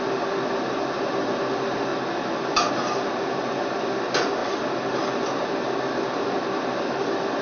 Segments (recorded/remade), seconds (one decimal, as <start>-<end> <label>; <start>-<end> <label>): 0.0-7.4 recorded